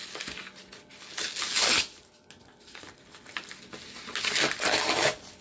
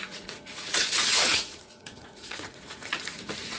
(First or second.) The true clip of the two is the first